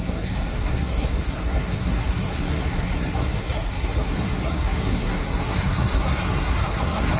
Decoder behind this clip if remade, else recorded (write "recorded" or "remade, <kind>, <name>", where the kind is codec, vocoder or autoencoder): remade, codec, SNAC